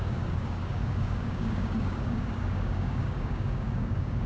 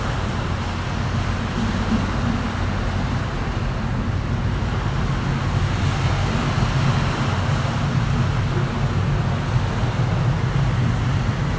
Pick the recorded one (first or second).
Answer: second